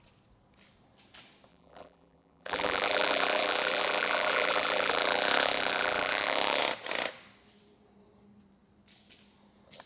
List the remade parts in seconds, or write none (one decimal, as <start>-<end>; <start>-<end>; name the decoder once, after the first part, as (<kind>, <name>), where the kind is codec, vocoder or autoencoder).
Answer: 1.5-6.6 (vocoder, BigVGAN v2)